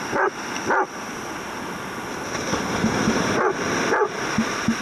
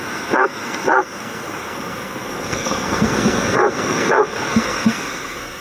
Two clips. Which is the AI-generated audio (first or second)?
second